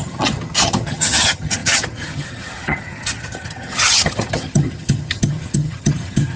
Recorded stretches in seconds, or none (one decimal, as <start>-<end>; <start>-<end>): none